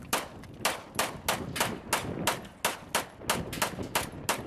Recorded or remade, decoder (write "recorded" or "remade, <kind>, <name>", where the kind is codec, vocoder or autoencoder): recorded